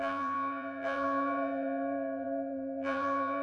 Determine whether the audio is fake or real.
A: fake